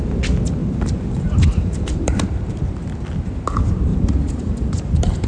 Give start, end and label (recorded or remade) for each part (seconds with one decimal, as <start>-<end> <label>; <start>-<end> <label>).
0.0-0.6 recorded; 0.6-2.2 remade; 2.2-3.9 recorded; 3.9-5.3 remade